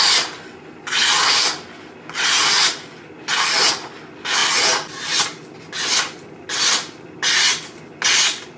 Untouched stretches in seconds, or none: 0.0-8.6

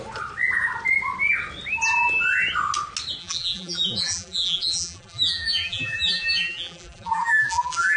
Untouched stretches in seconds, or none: 0.0-3.2

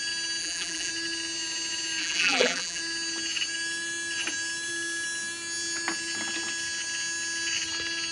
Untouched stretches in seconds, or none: 0.0-0.4; 0.9-2.0; 2.8-8.1

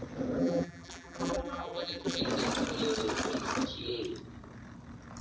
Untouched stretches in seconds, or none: 0.0-0.4; 2.2-5.2

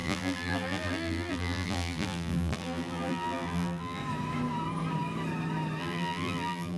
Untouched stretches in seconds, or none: 4.0-5.8